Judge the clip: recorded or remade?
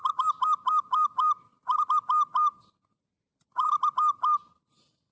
recorded